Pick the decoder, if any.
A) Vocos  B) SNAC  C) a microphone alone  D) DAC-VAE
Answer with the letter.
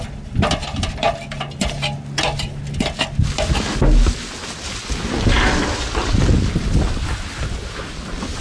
C